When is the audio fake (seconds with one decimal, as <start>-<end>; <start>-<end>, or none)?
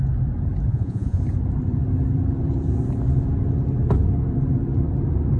0.7-1.2